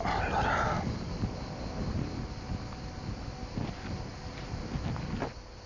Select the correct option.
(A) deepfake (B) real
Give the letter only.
B